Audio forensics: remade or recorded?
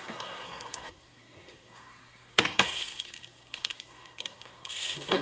remade